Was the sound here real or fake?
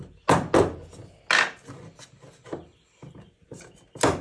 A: real